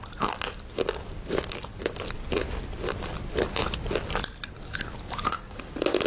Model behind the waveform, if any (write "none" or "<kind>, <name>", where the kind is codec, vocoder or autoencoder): none